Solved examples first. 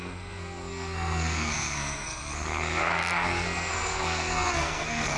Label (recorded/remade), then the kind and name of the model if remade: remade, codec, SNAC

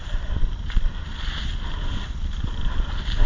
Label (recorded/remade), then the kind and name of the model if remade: recorded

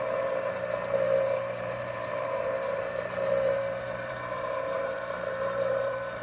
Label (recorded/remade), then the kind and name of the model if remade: remade, vocoder, BigVGAN v2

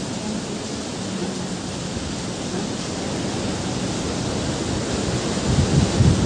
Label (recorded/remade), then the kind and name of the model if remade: recorded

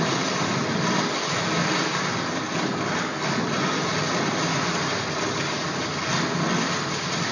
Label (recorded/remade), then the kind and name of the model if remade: recorded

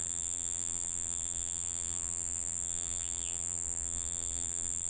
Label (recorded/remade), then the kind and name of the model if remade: remade, vocoder, BigVGAN v2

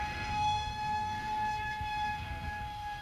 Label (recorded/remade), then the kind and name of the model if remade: remade, codec, SNAC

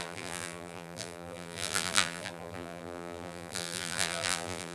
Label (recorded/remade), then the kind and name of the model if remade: remade, vocoder, BigVGAN v2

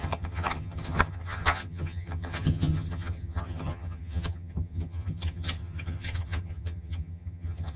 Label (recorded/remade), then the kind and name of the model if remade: remade, vocoder, HiFi-GAN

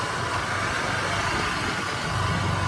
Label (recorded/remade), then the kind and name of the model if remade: recorded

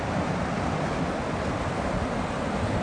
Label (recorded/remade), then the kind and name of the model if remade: recorded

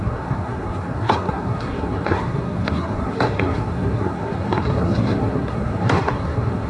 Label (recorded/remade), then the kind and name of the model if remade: remade, codec, SNAC